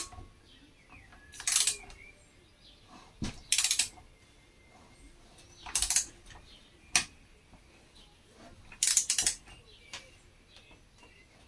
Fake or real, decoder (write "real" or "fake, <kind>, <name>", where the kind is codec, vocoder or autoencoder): real